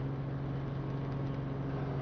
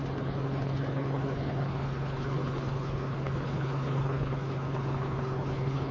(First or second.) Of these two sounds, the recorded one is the first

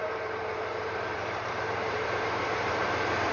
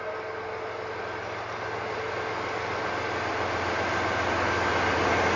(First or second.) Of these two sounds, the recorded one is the second